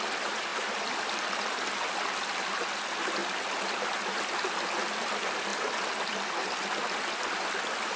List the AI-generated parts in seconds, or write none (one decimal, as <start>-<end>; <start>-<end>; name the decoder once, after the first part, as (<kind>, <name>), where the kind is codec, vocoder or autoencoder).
none